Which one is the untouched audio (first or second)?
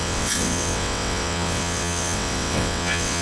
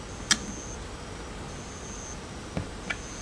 second